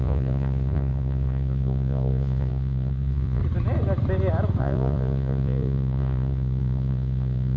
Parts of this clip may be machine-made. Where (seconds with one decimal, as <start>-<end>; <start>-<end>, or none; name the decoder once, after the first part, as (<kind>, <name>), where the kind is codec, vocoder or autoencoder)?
0.0-3.4 (vocoder, Vocos); 4.6-7.6